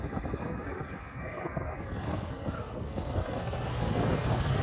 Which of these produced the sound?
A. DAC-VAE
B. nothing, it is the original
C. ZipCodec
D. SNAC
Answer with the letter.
D